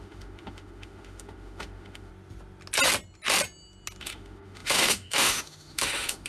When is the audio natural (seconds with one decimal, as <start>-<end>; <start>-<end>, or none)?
2.1-4.0